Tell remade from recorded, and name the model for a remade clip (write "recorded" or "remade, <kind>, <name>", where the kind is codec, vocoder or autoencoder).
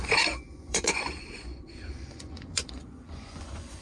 remade, vocoder, Vocos